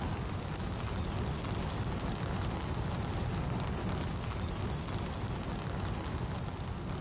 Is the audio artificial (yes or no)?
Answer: no